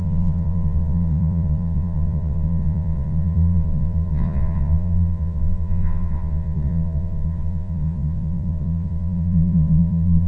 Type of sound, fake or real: fake